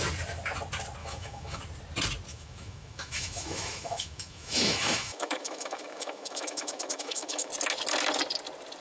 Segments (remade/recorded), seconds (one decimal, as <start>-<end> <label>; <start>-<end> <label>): 0.0-1.0 recorded; 1.0-1.6 remade; 1.6-2.3 recorded; 2.3-7.5 remade; 7.5-8.8 recorded